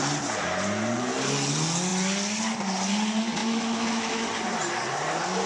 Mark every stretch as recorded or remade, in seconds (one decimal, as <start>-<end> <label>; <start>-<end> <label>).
0.0-3.4 recorded; 3.4-4.3 remade; 4.3-5.5 recorded